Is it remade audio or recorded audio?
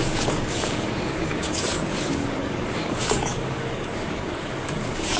remade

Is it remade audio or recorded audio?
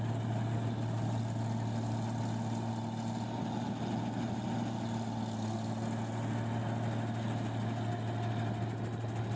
recorded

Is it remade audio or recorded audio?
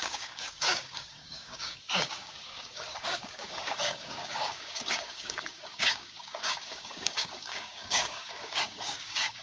remade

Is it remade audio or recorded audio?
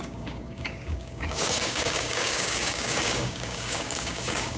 remade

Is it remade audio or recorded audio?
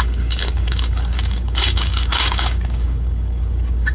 remade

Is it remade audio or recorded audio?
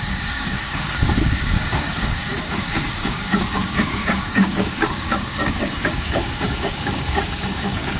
remade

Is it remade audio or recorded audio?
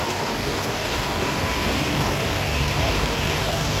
remade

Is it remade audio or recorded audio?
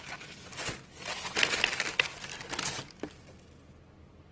recorded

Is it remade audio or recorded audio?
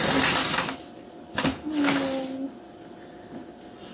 recorded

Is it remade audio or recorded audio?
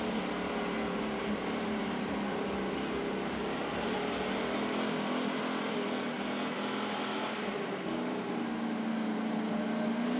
recorded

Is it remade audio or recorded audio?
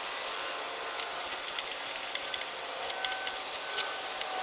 recorded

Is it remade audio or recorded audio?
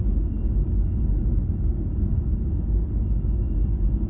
remade